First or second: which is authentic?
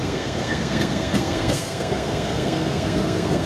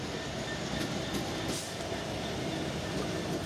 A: second